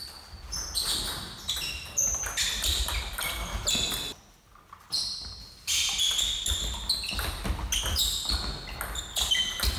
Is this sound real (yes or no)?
yes